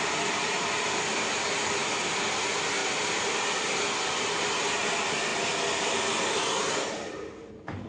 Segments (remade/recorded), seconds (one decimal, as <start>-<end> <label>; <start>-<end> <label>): 0.0-1.8 recorded; 1.8-2.3 remade; 2.3-2.8 recorded; 2.8-3.8 remade; 3.8-7.9 recorded